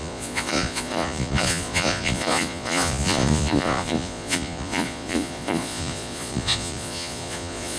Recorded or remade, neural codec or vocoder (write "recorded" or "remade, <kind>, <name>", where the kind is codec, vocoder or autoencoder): remade, vocoder, Vocos